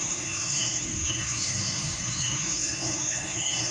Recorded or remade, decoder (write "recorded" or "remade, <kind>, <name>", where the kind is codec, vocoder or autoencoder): remade, codec, SNAC